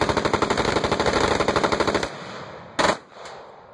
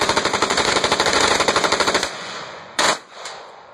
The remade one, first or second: second